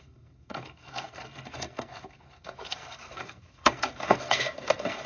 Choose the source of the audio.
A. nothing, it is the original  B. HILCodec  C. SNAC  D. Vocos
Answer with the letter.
C